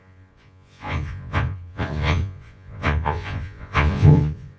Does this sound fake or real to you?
fake